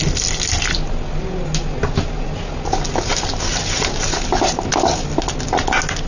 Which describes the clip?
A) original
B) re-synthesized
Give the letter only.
A